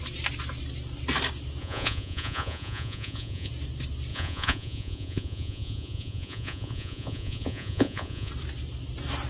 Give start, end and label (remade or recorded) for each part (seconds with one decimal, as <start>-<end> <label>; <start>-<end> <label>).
0.0-1.6 recorded; 1.6-3.5 remade; 3.5-4.1 recorded; 4.1-8.3 remade; 8.3-9.3 recorded